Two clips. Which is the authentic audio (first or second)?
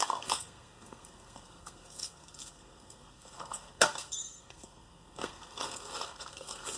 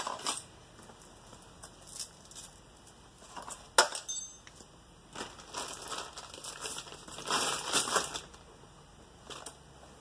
second